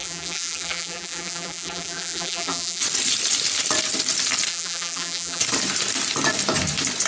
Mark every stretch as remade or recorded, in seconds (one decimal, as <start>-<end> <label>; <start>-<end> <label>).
0.0-2.8 remade; 2.8-4.5 recorded; 4.5-5.4 remade; 5.4-7.1 recorded